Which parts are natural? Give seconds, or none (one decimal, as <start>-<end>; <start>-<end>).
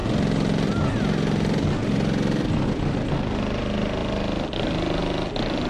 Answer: 0.0-5.7